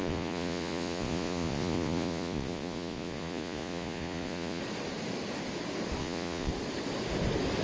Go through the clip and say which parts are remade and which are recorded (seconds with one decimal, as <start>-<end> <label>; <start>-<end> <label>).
0.0-4.6 remade; 4.6-6.0 recorded; 6.0-6.5 remade; 6.5-7.6 recorded